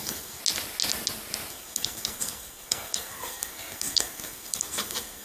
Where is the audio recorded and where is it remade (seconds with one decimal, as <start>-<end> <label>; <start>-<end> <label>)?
0.0-0.4 remade; 0.4-1.5 recorded; 1.5-5.2 remade